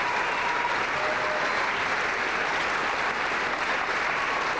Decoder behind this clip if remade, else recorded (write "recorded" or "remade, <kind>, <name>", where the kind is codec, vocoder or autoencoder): recorded